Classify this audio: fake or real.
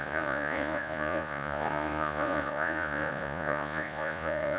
fake